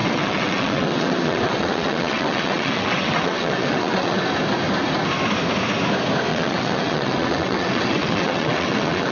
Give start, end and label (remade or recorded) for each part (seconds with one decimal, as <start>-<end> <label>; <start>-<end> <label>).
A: 0.0-4.2 remade; 4.2-6.3 recorded; 6.3-9.1 remade